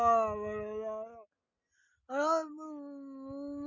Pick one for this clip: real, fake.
real